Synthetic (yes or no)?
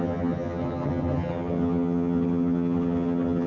yes